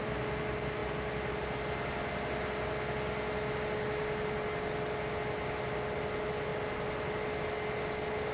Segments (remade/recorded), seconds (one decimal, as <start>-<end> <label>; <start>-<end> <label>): 0.0-8.3 recorded